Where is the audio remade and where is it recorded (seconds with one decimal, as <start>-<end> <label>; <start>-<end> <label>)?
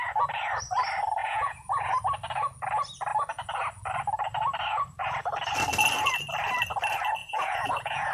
0.0-1.2 recorded; 1.2-2.0 remade; 2.0-7.2 recorded; 7.2-8.1 remade